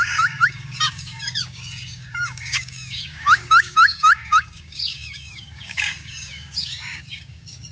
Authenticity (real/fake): fake